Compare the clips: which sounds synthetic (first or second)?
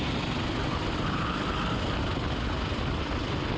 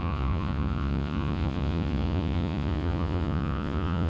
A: second